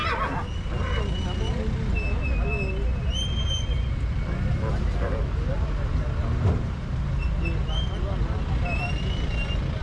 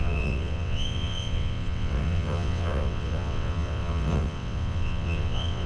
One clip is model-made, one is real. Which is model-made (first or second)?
second